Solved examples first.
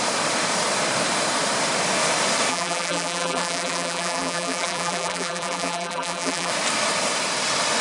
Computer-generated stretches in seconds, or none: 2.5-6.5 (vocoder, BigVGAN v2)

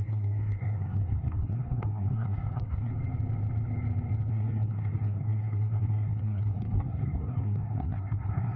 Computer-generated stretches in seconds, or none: 0.0-2.9 (codec, SNAC); 4.3-8.6

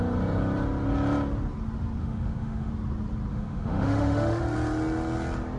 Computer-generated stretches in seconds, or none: 2.0-2.7 (autoencoder, DAC-VAE); 3.3-4.4

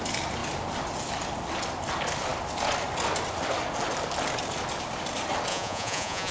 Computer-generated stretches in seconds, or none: 5.5-6.3 (vocoder, Vocos)

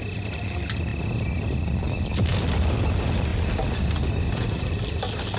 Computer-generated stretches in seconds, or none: none

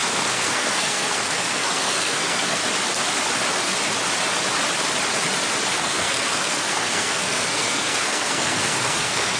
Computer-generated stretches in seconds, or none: 0.0-2.6 (codec, SNAC); 5.7-9.4

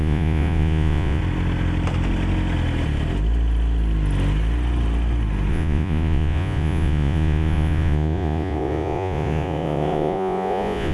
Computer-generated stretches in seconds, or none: 0.0-1.2 (vocoder, Vocos); 5.5-10.9

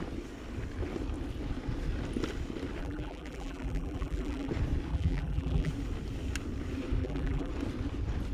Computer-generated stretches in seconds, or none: 2.8-4.5 (vocoder, BigVGAN v2); 4.9-5.7; 7.0-7.5